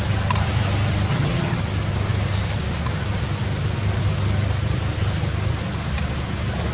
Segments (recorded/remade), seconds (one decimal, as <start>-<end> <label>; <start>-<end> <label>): 0.0-1.1 recorded; 1.1-1.6 remade; 1.6-6.7 recorded